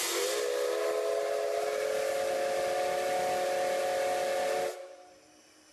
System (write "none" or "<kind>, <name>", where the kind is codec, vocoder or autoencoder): none